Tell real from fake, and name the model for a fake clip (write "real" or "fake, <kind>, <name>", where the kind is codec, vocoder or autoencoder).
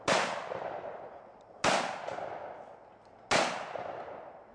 real